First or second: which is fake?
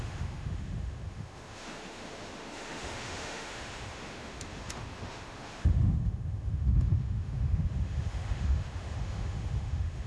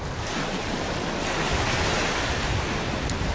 first